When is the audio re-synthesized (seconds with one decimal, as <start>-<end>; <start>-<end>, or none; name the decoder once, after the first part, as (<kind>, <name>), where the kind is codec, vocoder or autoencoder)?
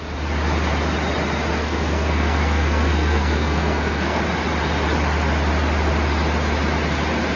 1.6-4.2 (codec, SNAC)